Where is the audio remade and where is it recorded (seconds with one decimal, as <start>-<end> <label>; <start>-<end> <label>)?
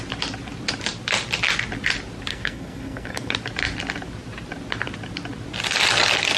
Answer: 0.0-2.3 recorded; 2.3-3.3 remade; 3.3-6.4 recorded